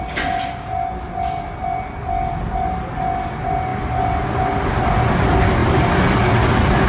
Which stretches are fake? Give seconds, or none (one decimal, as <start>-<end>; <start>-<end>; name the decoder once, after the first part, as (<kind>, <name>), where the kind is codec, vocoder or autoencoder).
none